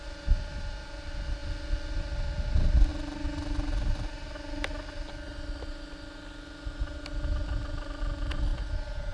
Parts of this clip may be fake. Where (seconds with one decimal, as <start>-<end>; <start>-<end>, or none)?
none